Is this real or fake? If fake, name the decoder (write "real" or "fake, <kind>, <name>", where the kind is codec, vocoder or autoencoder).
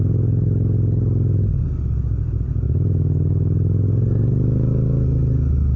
real